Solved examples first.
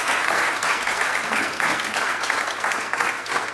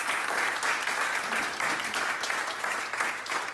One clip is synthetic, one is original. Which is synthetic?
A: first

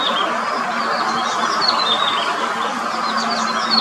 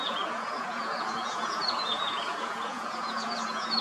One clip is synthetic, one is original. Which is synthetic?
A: second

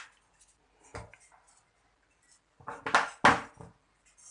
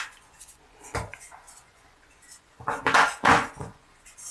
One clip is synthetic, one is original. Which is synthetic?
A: second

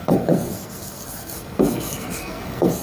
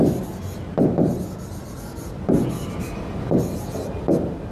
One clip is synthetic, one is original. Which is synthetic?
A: first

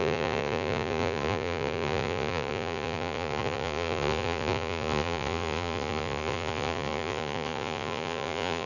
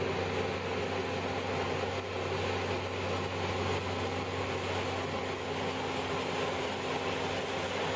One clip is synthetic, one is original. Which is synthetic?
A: first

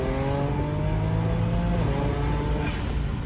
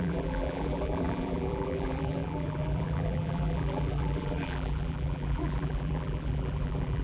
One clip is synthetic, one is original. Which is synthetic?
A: second